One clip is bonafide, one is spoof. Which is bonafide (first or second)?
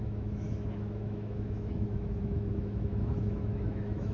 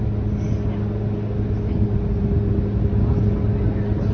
second